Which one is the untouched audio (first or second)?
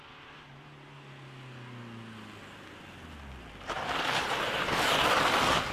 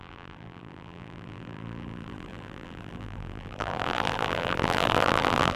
first